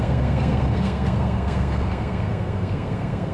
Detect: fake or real fake